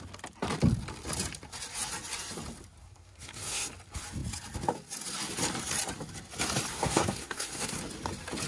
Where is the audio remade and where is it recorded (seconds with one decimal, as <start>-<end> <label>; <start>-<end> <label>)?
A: 0.0-2.8 recorded; 2.8-3.7 remade; 3.7-6.7 recorded; 6.7-7.8 remade; 7.8-8.5 recorded